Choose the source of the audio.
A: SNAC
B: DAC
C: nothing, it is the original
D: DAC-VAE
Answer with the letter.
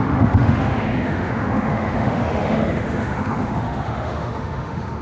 D